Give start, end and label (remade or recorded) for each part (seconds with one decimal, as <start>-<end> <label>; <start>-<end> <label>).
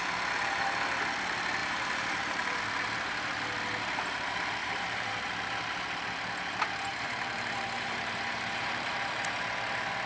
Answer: 0.0-1.6 recorded; 1.6-2.6 remade; 2.6-4.6 recorded; 4.6-5.2 remade; 5.2-6.9 recorded; 6.9-8.9 remade; 8.9-10.1 recorded